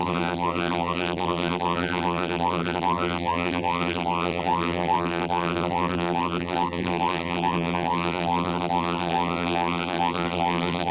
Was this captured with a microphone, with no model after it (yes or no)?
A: no